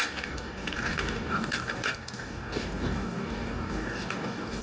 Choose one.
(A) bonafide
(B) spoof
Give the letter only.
B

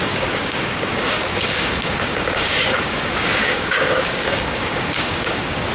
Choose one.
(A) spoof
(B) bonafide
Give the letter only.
A